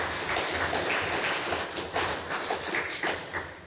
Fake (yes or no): no